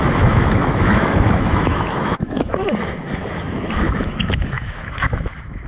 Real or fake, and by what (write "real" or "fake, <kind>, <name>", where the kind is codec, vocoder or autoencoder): fake, autoencoder, DAC-VAE